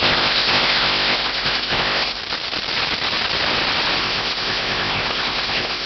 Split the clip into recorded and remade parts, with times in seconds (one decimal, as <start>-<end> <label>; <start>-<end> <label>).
0.0-2.2 remade; 2.2-4.0 recorded; 4.0-5.9 remade